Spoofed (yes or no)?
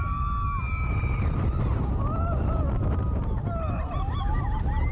no